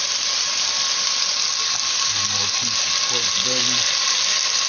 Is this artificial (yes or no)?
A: no